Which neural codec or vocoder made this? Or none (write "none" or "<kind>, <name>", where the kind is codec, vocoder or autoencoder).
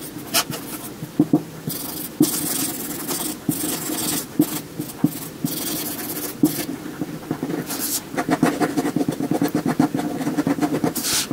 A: none